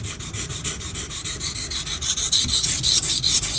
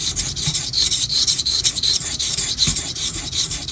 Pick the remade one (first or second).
second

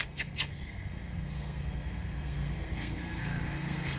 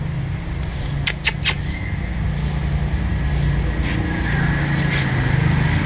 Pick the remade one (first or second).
first